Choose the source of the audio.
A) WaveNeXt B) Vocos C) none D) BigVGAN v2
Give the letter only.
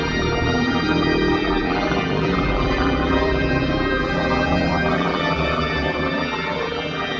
D